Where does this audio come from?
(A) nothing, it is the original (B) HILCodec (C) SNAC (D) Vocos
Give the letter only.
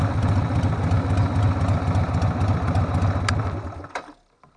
A